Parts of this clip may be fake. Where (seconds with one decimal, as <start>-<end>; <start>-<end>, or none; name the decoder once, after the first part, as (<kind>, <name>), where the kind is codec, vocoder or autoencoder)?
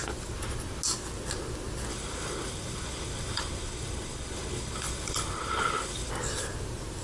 1.9-6.1 (codec, HILCodec)